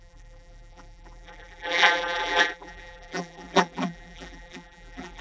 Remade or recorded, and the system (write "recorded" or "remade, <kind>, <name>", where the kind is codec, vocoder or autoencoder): remade, vocoder, BigVGAN v2